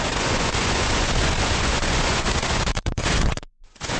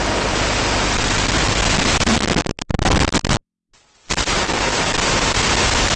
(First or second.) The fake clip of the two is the first